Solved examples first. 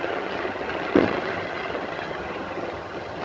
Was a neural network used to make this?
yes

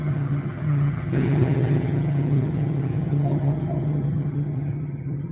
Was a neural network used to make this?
yes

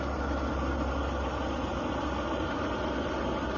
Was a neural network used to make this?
no